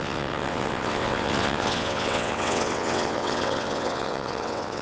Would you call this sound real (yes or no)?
no